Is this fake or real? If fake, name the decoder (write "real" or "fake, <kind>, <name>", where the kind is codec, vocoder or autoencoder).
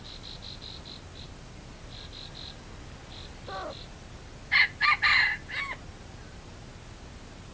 real